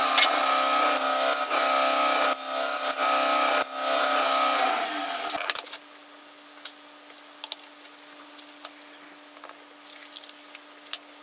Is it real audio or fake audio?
real